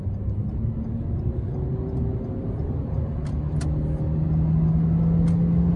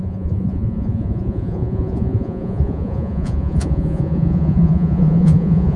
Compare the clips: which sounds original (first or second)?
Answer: first